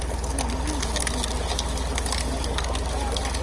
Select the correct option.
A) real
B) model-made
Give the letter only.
A